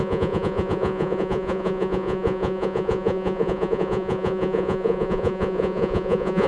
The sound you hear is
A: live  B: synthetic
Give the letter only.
B